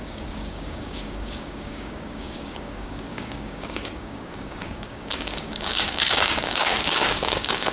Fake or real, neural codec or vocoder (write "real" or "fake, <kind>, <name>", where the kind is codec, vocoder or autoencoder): fake, codec, DAC